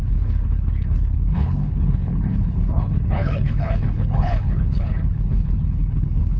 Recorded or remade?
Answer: remade